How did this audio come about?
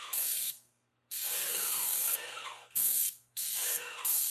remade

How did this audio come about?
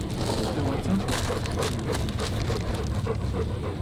recorded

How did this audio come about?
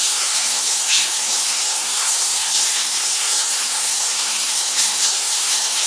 remade